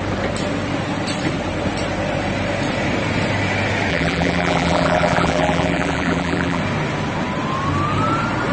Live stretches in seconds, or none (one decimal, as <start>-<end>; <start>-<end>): 0.0-3.9; 6.6-8.5